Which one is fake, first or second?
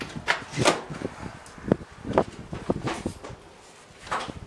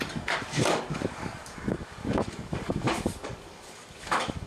second